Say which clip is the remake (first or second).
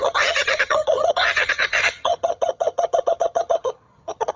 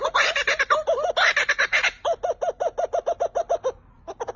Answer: first